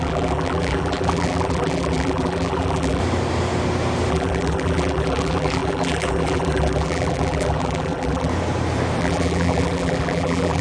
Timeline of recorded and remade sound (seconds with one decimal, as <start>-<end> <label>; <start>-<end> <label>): 0.0-3.0 remade; 3.0-4.1 recorded; 4.1-8.3 remade; 8.3-9.0 recorded; 9.0-10.6 remade